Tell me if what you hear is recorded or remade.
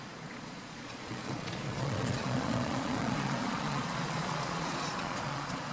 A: remade